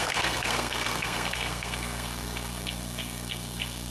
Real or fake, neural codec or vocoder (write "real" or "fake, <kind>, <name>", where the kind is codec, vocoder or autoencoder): fake, codec, SNAC